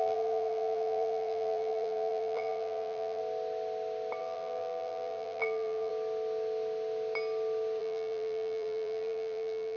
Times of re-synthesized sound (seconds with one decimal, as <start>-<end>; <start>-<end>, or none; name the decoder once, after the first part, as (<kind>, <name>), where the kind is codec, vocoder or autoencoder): 0.0-3.2 (vocoder, BigVGAN v2); 4.2-5.9; 7.8-9.8